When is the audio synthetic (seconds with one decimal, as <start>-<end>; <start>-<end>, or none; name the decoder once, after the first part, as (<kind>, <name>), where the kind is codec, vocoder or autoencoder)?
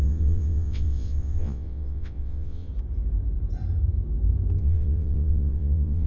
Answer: 0.0-2.7 (vocoder, WaveNeXt); 4.6-6.1